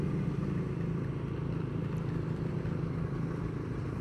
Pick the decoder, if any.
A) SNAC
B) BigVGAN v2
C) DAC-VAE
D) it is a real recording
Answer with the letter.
D